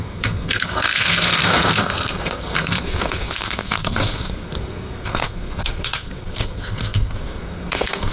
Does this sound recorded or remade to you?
remade